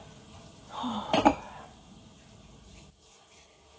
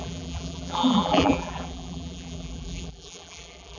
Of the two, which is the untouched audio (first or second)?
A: first